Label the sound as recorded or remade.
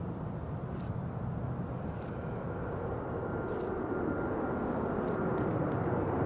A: recorded